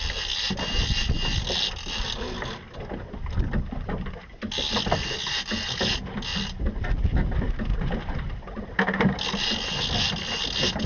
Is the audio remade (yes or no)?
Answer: no